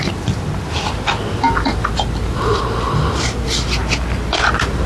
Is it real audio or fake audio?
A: real